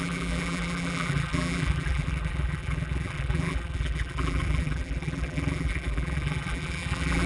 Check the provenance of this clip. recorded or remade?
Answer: remade